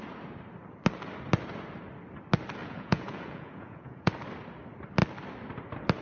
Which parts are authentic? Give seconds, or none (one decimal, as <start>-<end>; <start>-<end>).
0.0-2.6; 4.1-6.0